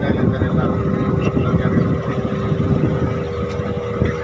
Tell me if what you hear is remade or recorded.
recorded